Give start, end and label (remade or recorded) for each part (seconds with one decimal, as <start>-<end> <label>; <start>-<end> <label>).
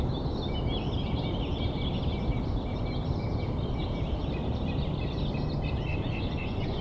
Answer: 0.0-5.9 recorded; 5.9-6.8 remade